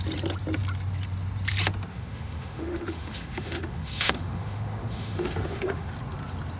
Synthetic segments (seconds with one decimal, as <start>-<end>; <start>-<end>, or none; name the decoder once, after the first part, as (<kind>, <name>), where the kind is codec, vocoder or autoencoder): 1.9-5.9 (autoencoder, DAC-VAE)